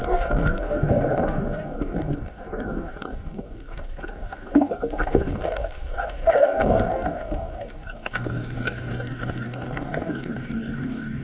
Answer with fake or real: fake